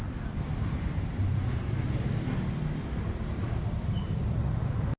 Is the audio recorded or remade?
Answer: recorded